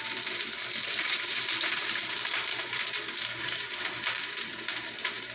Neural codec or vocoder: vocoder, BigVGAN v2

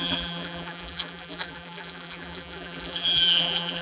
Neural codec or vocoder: vocoder, BigVGAN v2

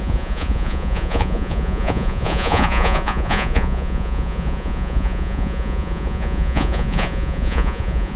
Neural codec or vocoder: vocoder, Vocos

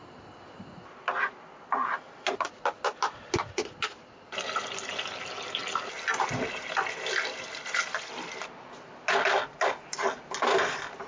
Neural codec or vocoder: none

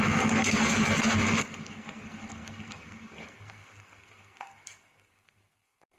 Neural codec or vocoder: codec, SNAC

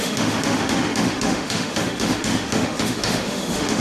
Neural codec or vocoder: autoencoder, DAC-VAE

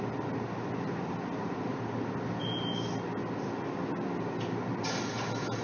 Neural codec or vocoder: none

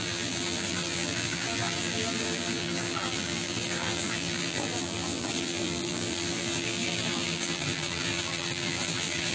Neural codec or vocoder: vocoder, BigVGAN v2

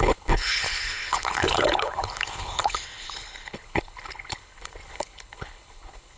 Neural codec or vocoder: codec, HILCodec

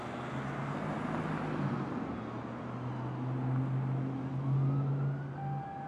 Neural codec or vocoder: none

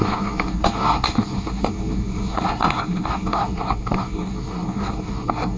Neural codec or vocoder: codec, SNAC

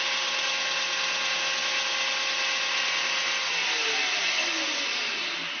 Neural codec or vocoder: none